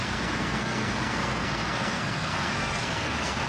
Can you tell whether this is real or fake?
fake